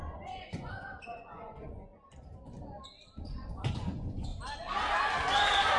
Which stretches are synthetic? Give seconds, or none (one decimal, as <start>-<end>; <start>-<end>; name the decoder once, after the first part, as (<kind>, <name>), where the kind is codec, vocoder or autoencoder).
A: 0.0-1.9 (vocoder, Vocos); 3.2-4.3